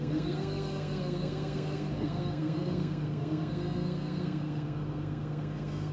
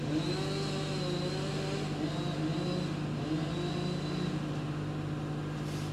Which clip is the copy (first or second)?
first